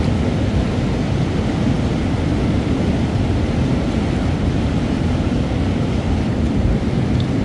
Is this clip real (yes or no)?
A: yes